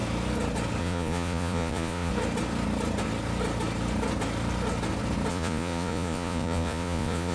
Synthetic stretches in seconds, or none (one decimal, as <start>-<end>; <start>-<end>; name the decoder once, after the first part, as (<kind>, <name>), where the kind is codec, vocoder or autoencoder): 0.8-2.1 (vocoder, Vocos); 5.3-7.3